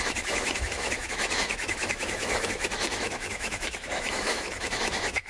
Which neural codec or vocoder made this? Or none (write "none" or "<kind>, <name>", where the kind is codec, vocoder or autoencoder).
autoencoder, DAC-VAE